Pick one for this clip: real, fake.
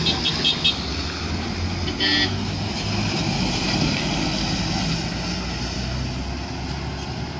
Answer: real